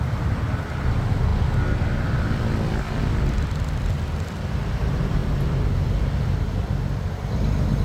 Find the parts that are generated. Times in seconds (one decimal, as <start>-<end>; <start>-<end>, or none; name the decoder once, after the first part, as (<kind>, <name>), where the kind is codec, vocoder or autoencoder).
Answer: 0.0-1.3 (vocoder, BigVGAN v2); 3.1-7.8